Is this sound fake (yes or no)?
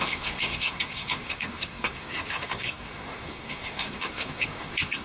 yes